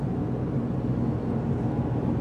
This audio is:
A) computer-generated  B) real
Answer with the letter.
B